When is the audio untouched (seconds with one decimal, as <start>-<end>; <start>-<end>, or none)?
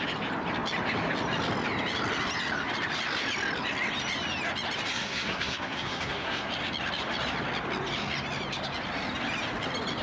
0.0-4.9; 6.5-10.0